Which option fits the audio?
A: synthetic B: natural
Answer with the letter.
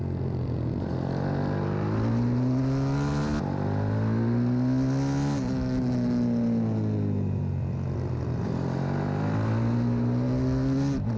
B